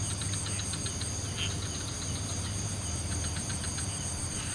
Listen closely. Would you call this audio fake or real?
fake